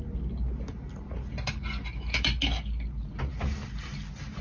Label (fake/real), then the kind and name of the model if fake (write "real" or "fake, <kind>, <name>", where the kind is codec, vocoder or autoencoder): real